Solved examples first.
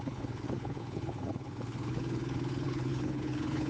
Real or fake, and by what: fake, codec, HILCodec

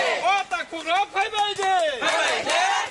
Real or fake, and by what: real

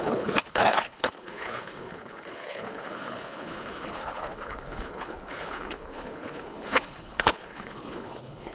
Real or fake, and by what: fake, codec, HILCodec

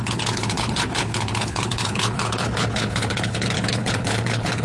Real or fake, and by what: fake, codec, HILCodec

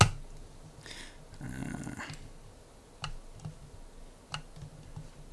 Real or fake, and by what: real